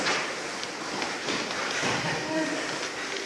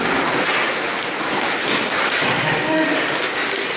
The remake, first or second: first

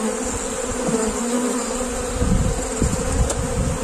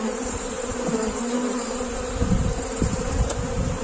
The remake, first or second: second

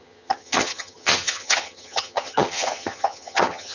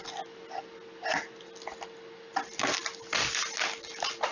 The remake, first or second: first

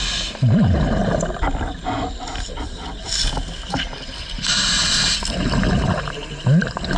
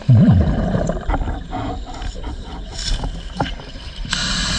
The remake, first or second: second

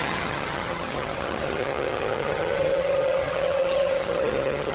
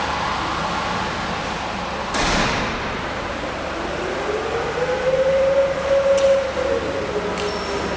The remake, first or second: first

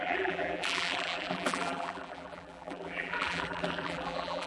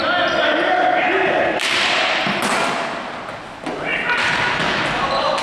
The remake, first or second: first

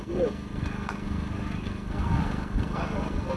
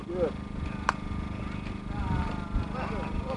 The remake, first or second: first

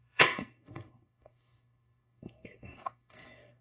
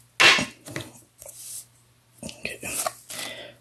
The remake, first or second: first